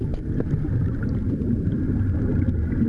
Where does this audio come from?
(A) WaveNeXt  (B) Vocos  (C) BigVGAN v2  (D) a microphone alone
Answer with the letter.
C